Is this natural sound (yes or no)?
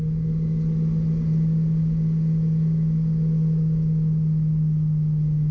yes